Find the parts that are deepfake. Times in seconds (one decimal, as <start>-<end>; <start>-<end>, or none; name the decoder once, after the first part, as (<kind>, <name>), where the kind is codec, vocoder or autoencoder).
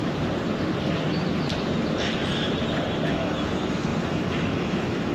3.1-5.1 (autoencoder, DAC-VAE)